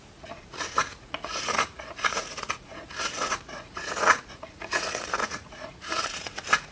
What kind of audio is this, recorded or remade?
remade